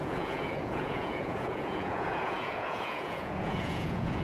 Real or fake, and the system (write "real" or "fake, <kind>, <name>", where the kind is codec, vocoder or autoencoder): fake, vocoder, Vocos